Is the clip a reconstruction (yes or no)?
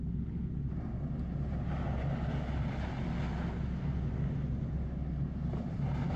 no